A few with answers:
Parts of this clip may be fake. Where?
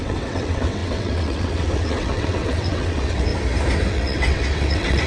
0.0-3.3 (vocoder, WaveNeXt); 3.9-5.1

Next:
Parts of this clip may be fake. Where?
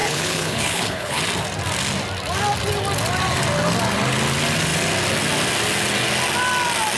0.0-1.2 (codec, HILCodec)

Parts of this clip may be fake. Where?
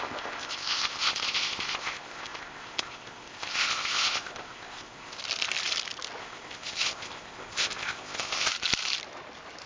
0.0-5.2 (codec, ZipCodec); 6.2-8.5